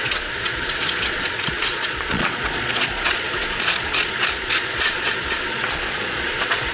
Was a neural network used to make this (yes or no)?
yes